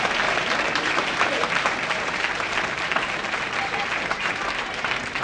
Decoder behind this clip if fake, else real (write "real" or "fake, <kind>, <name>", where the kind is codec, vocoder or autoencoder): fake, vocoder, BigVGAN v2